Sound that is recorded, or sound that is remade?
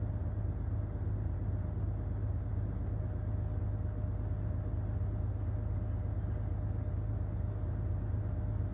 recorded